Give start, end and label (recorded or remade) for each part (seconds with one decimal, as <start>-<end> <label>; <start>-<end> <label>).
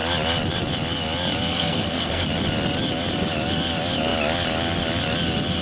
0.0-1.5 recorded; 1.5-2.3 remade; 2.3-5.6 recorded